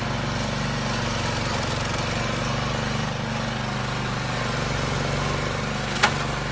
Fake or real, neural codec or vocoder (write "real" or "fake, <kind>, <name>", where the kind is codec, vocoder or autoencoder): real